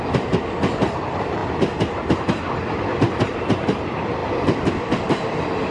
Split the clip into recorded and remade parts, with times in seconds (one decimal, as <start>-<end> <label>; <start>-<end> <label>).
0.0-1.4 remade; 1.4-2.7 recorded; 2.7-4.2 remade; 4.2-4.8 recorded; 4.8-5.7 remade